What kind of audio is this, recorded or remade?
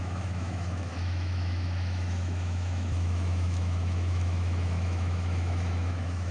remade